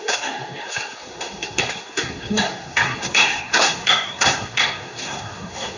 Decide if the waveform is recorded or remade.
remade